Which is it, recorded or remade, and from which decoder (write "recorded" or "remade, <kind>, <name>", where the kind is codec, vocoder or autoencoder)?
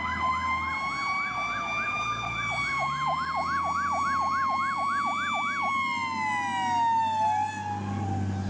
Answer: recorded